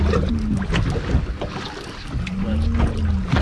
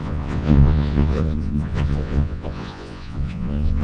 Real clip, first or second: first